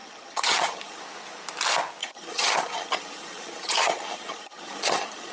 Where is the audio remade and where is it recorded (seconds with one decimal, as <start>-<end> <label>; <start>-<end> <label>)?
0.0-1.0 remade; 1.0-2.0 recorded; 2.0-5.3 remade